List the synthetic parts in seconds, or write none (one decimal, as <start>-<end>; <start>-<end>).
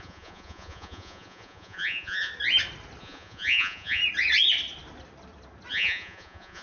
0.0-2.3; 3.0-4.0; 5.7-6.6